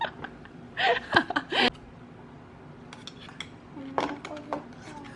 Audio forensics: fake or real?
real